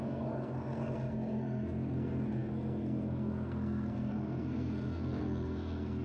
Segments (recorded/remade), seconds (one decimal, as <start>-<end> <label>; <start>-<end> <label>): 0.0-6.0 remade